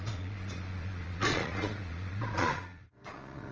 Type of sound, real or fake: fake